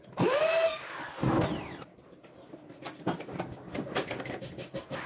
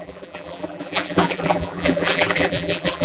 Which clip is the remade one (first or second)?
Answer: second